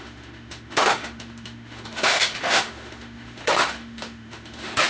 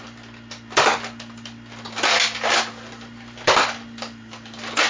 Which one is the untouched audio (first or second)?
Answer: second